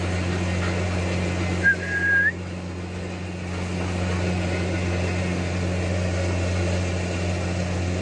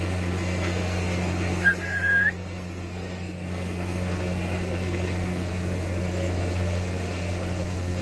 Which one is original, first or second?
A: first